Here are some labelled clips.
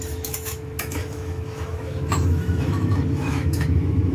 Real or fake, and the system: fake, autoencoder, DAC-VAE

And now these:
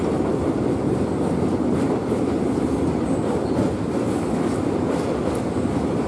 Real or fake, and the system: fake, vocoder, BigVGAN v2